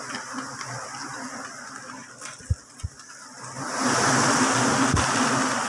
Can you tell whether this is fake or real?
real